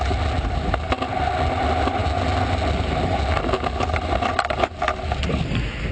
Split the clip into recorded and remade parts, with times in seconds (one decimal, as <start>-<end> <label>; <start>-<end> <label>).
0.0-5.9 recorded